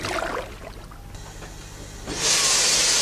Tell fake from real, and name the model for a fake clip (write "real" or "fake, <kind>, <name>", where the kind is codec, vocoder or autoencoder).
real